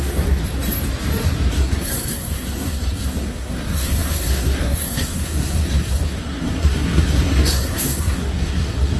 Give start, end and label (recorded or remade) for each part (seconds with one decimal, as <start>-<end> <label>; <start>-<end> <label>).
0.0-0.4 remade; 0.4-1.5 recorded; 1.5-9.0 remade